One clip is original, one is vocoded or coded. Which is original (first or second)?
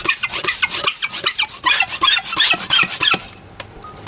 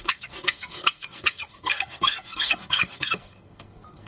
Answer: first